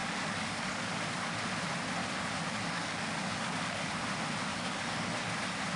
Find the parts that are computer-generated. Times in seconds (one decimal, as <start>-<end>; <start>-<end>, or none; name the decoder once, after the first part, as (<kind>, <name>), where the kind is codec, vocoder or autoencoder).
0.0-1.3 (codec, DAC); 2.0-3.9; 4.5-5.1

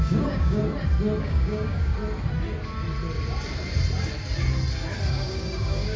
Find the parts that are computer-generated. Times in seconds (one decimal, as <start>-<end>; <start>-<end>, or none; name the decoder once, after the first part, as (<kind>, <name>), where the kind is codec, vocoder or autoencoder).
0.0-0.6 (codec, DAC); 1.2-1.9; 5.1-6.0